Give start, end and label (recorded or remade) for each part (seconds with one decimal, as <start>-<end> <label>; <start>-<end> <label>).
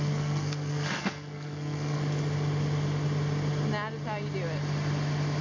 0.0-2.0 remade; 2.0-5.4 recorded